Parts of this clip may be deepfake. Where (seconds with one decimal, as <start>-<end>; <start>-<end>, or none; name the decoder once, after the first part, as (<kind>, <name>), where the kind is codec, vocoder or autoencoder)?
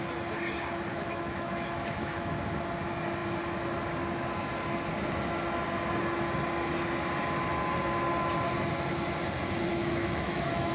0.9-2.3 (autoencoder, DAC-VAE); 9.7-10.7